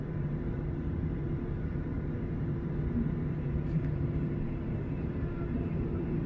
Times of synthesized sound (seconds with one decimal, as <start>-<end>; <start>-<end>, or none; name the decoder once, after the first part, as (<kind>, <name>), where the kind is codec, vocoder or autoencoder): 0.0-6.3 (vocoder, BigVGAN v2)